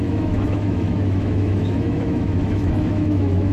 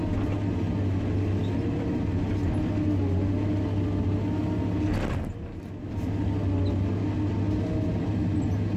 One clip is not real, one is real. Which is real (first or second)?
second